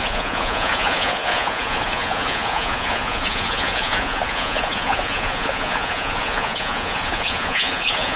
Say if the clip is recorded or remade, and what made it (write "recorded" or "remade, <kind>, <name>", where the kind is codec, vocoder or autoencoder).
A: remade, vocoder, Vocos